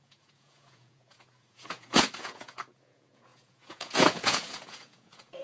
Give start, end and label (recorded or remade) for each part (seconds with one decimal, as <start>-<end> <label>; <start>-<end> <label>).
0.0-5.4 remade